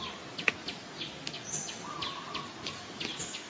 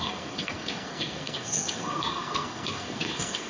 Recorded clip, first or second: first